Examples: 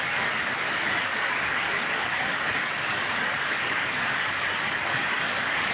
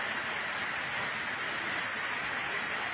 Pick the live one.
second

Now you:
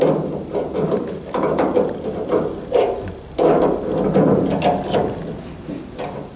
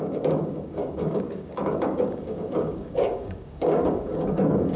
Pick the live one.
first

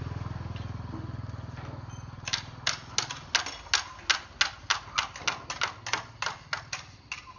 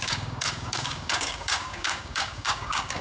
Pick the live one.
first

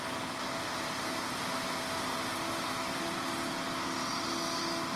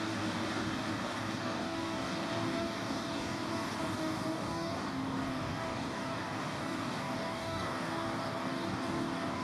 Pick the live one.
first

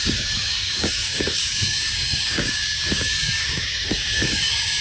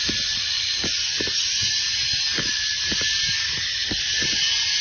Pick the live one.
second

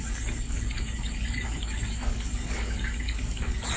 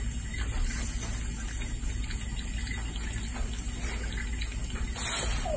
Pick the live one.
second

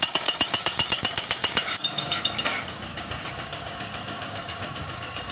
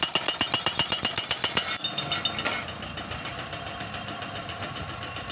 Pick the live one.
second